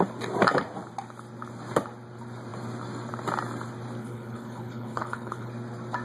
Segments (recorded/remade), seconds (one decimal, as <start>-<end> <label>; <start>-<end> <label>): 0.0-4.0 recorded; 4.0-5.5 remade; 5.5-6.0 recorded